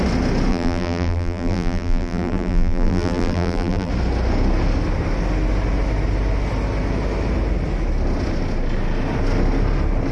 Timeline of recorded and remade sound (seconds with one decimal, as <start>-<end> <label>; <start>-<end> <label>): 0.0-0.5 recorded; 0.5-3.9 remade; 3.9-10.1 recorded